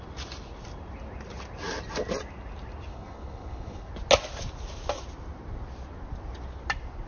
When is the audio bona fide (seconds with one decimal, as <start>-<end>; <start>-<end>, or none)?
0.0-2.9; 3.9-7.1